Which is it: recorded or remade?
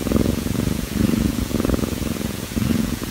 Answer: remade